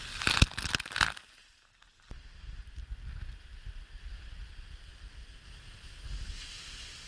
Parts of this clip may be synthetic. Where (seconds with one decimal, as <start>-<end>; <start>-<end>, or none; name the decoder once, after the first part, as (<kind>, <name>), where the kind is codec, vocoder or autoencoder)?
none